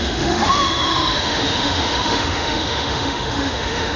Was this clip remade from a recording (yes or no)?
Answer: yes